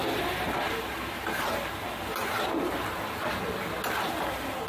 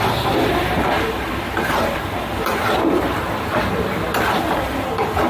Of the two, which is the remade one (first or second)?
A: second